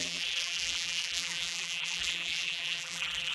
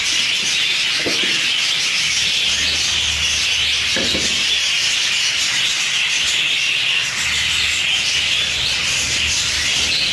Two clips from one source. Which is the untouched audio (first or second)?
second